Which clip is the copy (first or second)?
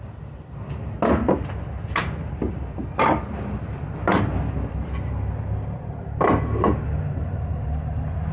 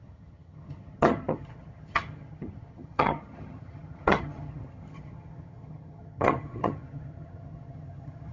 second